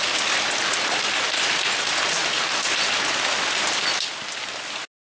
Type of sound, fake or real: real